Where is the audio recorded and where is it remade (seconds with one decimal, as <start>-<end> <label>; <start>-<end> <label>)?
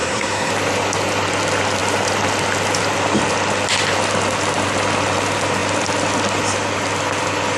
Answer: 0.0-0.5 remade; 0.5-7.6 recorded